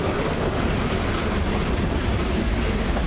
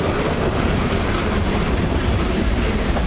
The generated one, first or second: second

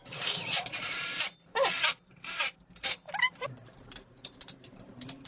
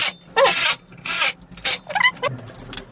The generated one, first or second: first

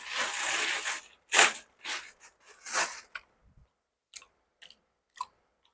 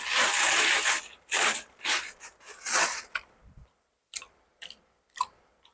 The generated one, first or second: second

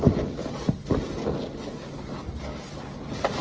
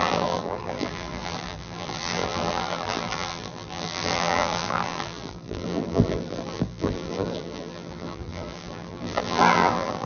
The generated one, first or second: second